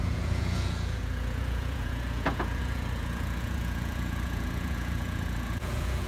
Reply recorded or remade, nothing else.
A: remade